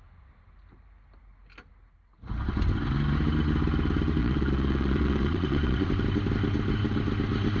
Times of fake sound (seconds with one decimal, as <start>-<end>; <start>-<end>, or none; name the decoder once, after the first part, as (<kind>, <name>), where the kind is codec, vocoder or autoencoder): 4.2-5.9 (vocoder, Vocos)